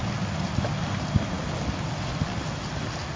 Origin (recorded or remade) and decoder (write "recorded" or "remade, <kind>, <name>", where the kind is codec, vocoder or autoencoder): recorded